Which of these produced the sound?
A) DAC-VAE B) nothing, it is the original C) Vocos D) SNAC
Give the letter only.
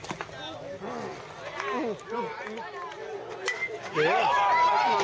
B